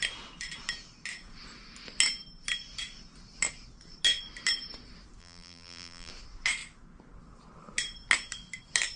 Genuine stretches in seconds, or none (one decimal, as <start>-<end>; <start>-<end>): 0.0-5.2; 6.1-9.0